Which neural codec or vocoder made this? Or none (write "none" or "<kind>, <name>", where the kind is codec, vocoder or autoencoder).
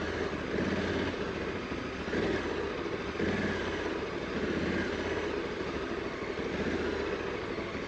none